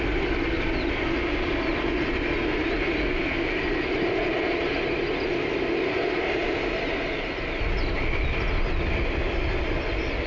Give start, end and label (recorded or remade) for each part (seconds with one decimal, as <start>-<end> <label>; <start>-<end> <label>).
0.0-10.3 recorded

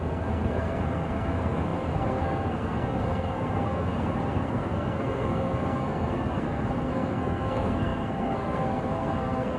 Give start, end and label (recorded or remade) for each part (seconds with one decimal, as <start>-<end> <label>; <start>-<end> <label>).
0.0-9.6 remade

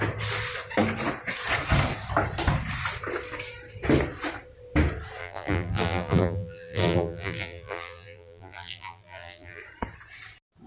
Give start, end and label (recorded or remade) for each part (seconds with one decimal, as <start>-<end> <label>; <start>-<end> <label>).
0.0-5.2 recorded; 5.2-9.6 remade; 9.6-10.7 recorded

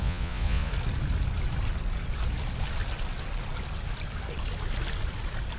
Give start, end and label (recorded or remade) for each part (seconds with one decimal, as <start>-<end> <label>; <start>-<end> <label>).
0.0-0.7 remade; 0.7-5.6 recorded

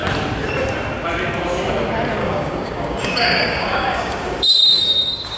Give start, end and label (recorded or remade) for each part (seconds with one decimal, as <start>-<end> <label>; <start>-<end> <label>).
0.0-2.2 recorded; 2.2-5.4 remade

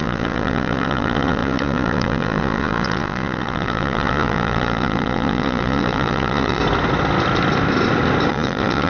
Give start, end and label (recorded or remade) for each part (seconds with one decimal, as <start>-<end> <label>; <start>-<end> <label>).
0.0-6.6 remade; 6.6-8.3 recorded; 8.3-8.9 remade